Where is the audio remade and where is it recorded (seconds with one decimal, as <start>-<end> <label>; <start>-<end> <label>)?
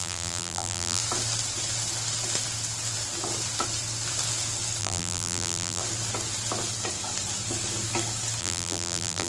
0.0-1.0 remade; 1.0-4.8 recorded; 4.8-5.8 remade; 5.8-8.4 recorded; 8.4-9.3 remade